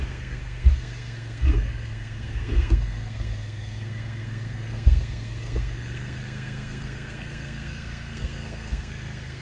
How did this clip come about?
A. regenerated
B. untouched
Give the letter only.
A